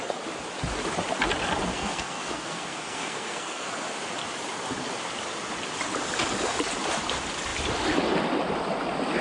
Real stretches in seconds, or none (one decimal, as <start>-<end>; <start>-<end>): 0.0-1.7; 3.7-9.2